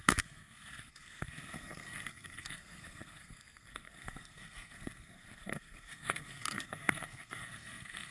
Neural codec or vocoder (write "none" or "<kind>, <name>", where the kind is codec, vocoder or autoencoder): codec, SNAC